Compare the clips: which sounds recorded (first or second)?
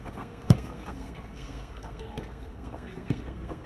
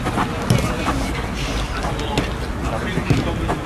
second